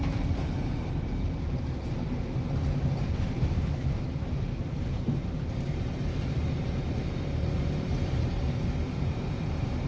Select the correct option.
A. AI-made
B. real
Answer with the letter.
A